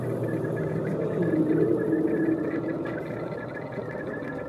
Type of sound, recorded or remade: recorded